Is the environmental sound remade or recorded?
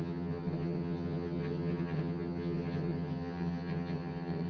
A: remade